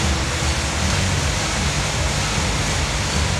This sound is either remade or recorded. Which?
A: recorded